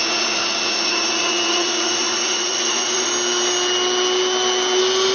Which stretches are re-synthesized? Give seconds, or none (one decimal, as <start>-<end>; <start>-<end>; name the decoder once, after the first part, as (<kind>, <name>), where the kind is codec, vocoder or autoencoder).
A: 0.0-3.1 (vocoder, Vocos)